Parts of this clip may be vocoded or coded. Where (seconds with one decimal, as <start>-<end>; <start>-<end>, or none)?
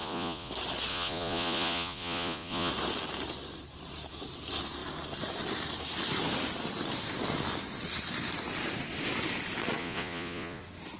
0.0-0.5; 0.9-2.7; 9.8-10.6